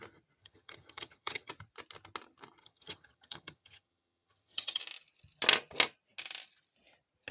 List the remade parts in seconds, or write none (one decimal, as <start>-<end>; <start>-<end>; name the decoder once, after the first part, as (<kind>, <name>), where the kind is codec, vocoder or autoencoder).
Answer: 0.4-1.5 (vocoder, HiFi-GAN); 2.6-4.8